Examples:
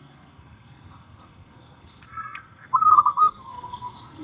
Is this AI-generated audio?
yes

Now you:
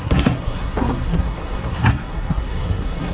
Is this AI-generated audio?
yes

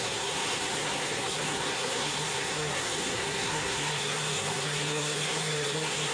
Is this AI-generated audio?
yes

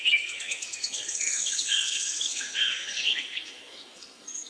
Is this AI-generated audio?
yes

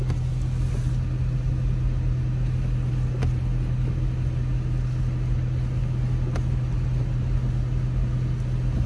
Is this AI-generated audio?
no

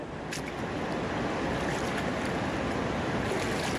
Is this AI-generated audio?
no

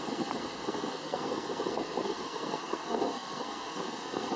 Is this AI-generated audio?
yes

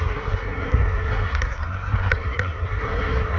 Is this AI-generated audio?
yes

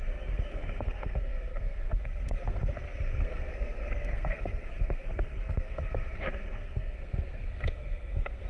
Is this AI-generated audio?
yes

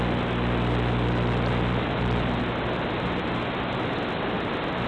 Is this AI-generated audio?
no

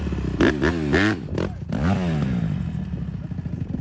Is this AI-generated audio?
no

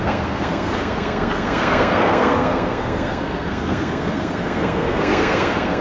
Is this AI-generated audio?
yes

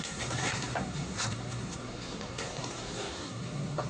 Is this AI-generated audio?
yes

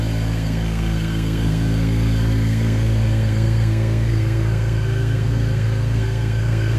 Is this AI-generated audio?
yes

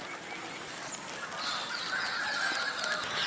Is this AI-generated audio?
no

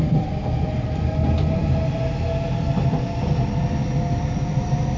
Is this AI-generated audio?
no